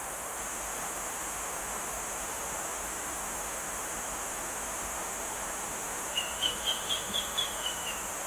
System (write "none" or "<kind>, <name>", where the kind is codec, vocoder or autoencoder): autoencoder, DAC-VAE